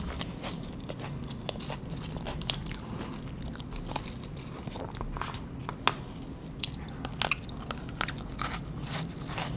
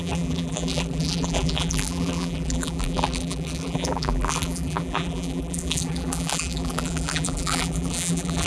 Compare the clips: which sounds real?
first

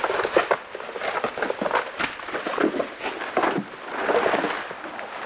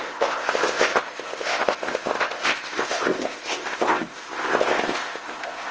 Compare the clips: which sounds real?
first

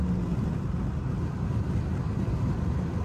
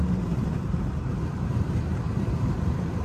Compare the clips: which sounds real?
first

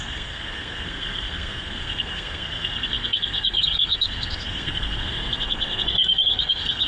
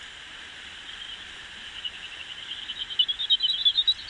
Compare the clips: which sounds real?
second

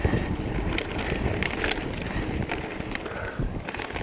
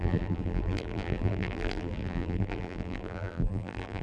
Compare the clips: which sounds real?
first